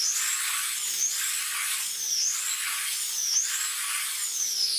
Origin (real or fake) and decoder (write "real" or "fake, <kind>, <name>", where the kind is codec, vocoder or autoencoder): fake, vocoder, BigVGAN v2